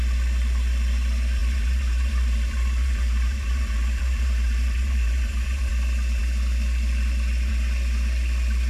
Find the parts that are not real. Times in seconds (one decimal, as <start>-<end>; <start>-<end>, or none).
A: 1.4-5.7